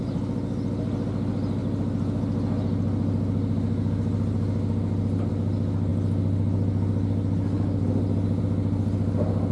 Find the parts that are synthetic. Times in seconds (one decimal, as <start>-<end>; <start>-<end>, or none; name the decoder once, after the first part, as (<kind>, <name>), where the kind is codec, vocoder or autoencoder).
none